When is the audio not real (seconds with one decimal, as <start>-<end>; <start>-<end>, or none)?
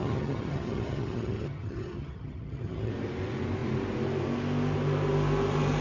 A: 0.0-2.9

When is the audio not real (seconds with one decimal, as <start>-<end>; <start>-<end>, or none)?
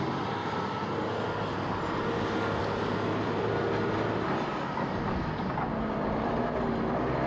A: none